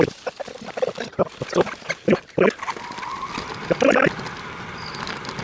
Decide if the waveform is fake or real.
real